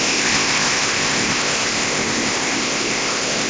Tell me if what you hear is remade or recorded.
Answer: remade